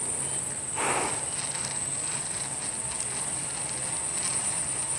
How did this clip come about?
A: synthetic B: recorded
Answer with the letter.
B